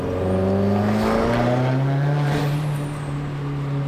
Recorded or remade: recorded